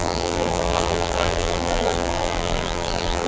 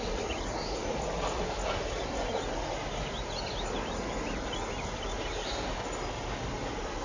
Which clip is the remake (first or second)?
first